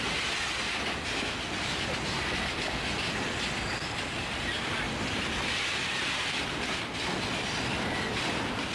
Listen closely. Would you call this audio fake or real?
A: real